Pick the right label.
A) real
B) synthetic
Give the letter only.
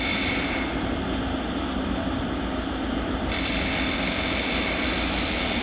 A